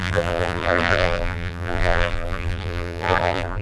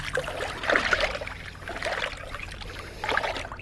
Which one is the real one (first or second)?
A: second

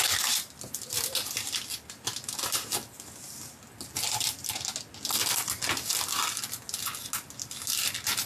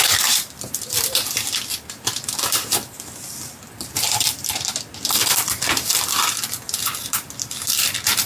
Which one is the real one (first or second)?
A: first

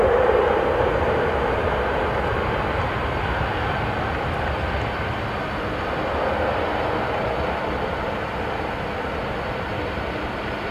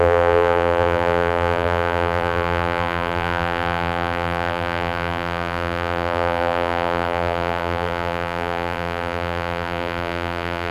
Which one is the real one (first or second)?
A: first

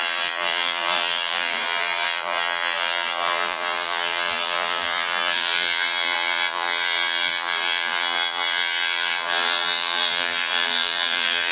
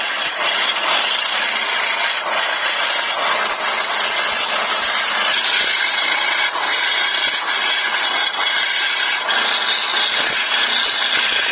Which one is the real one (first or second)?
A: second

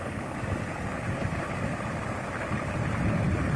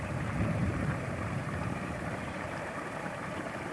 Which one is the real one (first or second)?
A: first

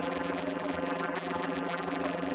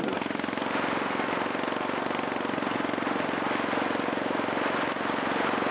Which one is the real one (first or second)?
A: second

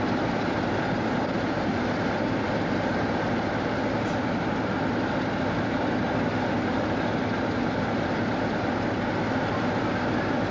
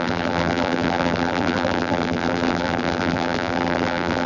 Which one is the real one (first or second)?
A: first